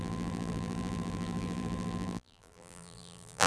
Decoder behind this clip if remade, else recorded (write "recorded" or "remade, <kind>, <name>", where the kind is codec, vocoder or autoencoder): remade, vocoder, BigVGAN v2